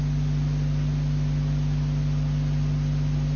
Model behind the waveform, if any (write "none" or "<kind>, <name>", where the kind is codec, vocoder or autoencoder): none